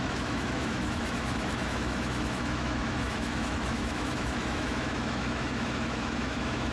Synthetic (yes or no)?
yes